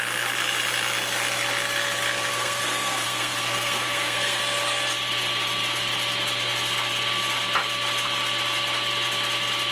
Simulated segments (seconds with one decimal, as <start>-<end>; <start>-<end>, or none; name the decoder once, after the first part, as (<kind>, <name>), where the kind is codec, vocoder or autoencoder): 2.3-4.4 (codec, SNAC)